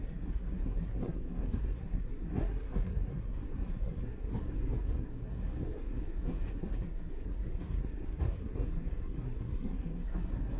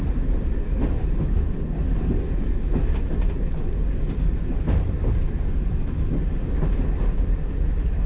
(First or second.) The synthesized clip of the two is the first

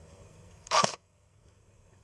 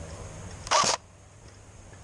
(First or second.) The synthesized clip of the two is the first